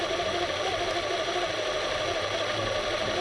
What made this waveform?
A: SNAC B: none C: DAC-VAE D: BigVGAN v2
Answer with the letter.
B